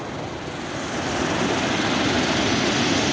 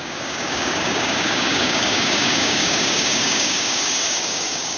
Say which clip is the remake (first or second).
second